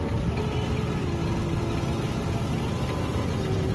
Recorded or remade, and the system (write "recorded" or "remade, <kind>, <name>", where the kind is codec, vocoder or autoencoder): recorded